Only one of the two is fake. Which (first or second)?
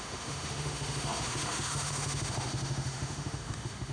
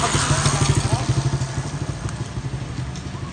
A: first